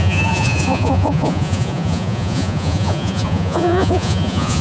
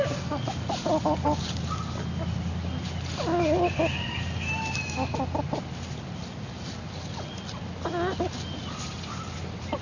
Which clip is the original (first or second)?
second